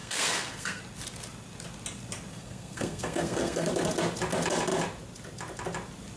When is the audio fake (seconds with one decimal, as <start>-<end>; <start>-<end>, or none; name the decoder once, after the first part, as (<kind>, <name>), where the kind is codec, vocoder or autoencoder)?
0.0-0.8 (codec, SNAC); 2.3-3.7